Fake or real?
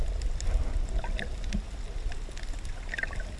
real